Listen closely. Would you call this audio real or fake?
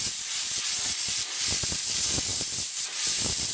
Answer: real